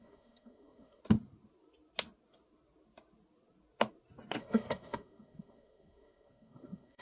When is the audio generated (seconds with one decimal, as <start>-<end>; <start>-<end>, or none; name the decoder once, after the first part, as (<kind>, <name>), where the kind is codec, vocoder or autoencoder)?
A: 0.0-1.0 (codec, SNAC); 4.4-7.0